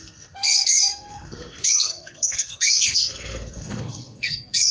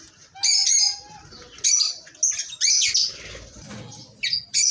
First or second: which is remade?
first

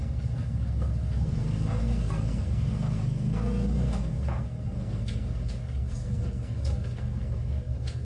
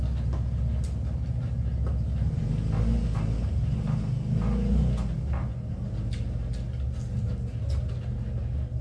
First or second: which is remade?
first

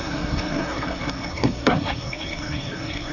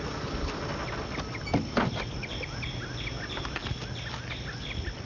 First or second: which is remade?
first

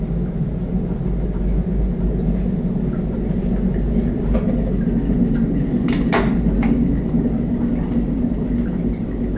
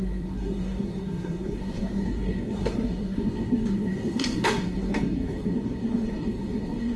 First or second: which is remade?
second